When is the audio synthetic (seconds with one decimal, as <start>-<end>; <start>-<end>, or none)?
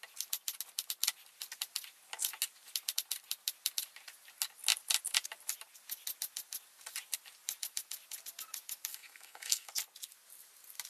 8.9-9.7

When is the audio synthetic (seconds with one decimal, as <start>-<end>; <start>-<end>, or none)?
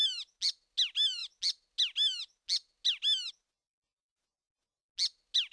none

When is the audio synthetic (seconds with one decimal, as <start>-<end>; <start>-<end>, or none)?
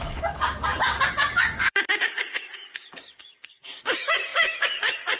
0.0-5.2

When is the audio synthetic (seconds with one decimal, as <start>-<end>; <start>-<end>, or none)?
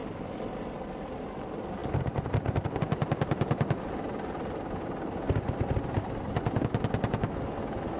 none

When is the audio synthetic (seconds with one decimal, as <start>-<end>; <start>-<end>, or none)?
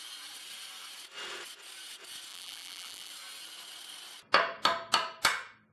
2.3-3.1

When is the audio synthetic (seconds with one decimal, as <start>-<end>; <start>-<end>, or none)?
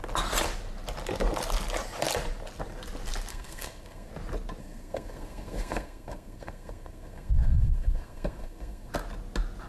3.3-4.1; 4.6-8.9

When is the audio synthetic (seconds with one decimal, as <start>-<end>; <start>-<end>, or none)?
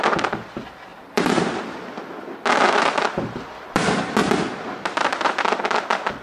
0.9-1.6